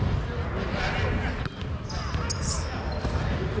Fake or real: real